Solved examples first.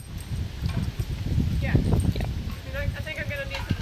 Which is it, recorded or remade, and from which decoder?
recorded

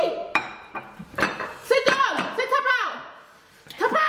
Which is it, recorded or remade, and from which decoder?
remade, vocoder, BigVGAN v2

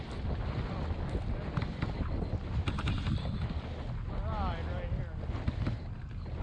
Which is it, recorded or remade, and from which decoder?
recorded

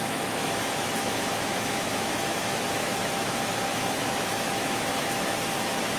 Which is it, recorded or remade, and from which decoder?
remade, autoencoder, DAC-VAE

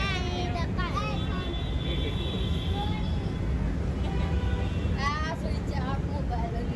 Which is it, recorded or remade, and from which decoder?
recorded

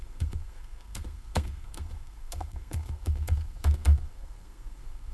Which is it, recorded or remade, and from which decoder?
remade, codec, SNAC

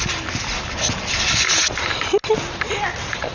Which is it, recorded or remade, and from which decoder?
recorded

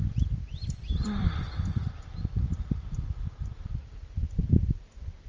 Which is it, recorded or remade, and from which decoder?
remade, vocoder, BigVGAN v2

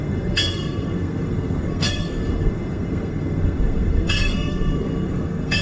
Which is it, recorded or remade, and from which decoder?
remade, codec, SNAC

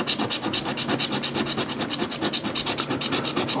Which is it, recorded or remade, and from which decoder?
recorded